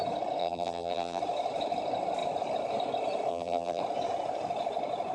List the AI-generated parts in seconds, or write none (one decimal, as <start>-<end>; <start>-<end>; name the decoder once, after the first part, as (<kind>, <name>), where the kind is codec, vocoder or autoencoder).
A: 0.4-1.2 (vocoder, BigVGAN v2); 3.3-3.8